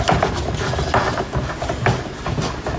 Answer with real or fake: real